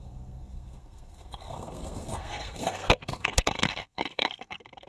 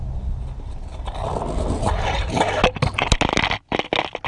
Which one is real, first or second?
second